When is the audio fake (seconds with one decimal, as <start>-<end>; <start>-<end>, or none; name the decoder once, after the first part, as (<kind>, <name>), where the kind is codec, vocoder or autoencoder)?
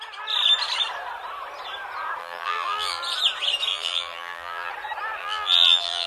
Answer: 2.2-3.0 (vocoder, BigVGAN v2); 3.7-4.7; 5.2-6.1